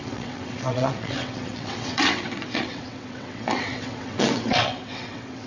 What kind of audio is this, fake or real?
fake